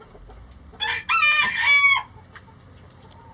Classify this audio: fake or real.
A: real